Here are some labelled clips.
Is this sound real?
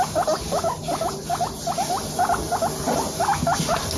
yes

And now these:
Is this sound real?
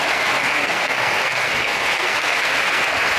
no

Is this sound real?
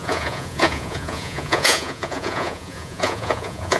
no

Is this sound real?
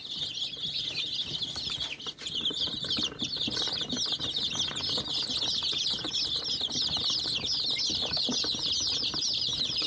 yes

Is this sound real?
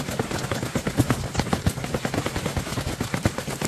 yes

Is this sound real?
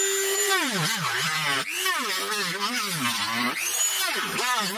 yes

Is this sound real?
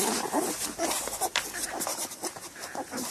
no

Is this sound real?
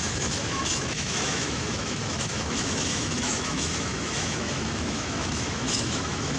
no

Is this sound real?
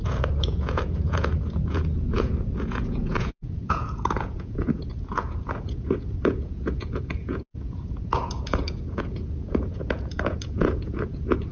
no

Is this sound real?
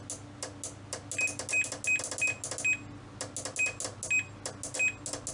yes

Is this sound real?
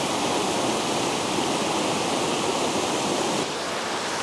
yes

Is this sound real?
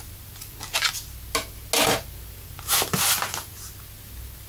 yes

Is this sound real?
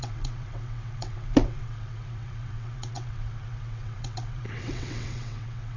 no